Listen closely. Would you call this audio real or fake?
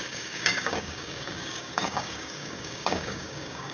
fake